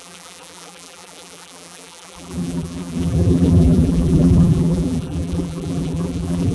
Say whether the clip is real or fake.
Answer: fake